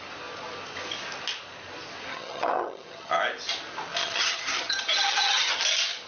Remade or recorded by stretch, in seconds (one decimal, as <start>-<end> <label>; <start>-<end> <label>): 0.0-2.1 recorded; 2.1-3.1 remade; 3.1-4.0 recorded; 4.0-5.6 remade; 5.6-6.1 recorded